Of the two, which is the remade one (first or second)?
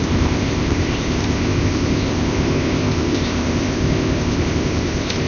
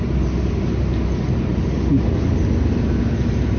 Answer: first